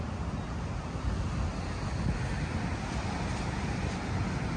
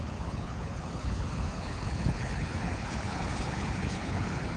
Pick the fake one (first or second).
second